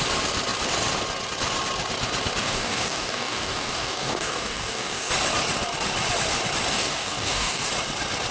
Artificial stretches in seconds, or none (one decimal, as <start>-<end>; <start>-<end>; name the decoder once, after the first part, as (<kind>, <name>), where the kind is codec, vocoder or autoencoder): 2.4-5.1 (codec, DAC); 6.7-7.7